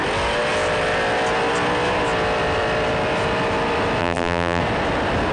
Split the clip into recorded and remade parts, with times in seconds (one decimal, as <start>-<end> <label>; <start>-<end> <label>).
0.0-4.0 recorded; 4.0-4.6 remade; 4.6-5.3 recorded